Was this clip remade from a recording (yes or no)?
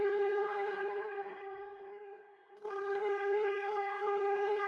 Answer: yes